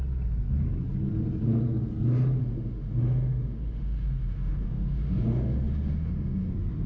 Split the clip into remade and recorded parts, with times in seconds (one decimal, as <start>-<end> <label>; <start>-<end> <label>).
0.0-2.4 recorded; 2.4-6.5 remade; 6.5-6.9 recorded

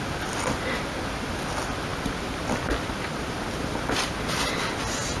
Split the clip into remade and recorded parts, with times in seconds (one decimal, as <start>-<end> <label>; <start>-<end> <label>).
0.0-5.2 recorded